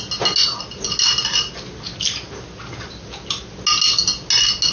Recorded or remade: recorded